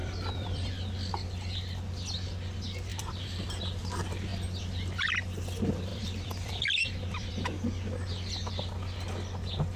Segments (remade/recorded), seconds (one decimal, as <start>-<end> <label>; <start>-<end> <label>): 0.0-0.7 remade; 0.7-2.9 recorded; 2.9-3.8 remade; 3.8-5.9 recorded; 5.9-7.3 remade; 7.3-9.8 recorded